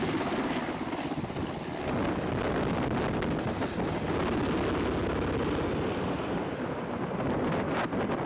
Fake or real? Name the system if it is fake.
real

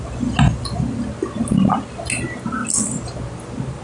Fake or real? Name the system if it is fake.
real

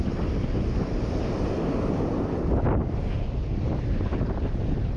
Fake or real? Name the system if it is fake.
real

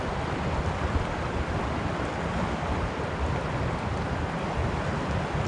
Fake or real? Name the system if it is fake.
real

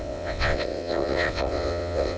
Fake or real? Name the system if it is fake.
fake, vocoder, WaveNeXt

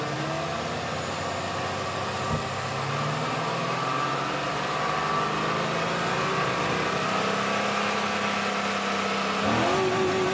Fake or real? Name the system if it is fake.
real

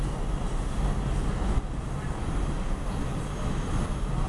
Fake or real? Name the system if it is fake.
real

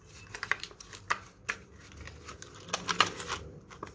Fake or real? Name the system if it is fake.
real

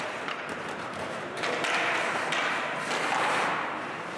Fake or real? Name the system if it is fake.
fake, vocoder, BigVGAN v2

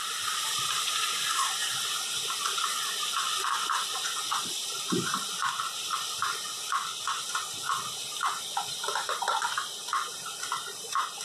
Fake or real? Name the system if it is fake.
real